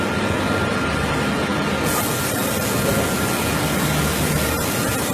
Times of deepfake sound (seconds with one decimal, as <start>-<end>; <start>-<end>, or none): none

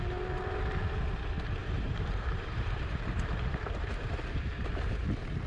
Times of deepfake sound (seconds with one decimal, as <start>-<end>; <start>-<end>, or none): 1.6-4.6

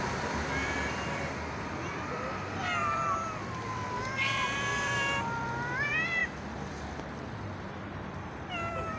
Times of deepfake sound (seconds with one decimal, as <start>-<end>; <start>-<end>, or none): 0.0-6.2; 7.6-9.0

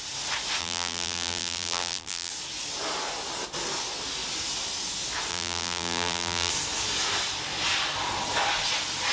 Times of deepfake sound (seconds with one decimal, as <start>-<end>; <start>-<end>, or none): 0.6-2.3; 5.3-6.5

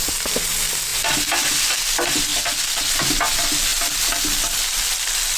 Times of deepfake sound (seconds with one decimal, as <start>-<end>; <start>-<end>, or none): none

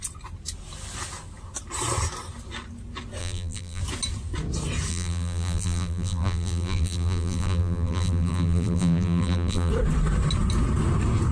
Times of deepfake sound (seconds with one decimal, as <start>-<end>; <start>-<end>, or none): 3.2-3.8; 4.9-9.7